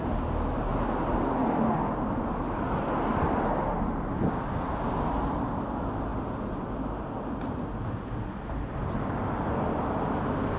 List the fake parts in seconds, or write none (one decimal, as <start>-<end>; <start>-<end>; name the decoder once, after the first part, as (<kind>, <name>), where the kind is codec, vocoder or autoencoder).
none